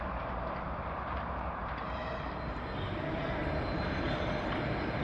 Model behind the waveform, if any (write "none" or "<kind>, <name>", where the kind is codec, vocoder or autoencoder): vocoder, BigVGAN v2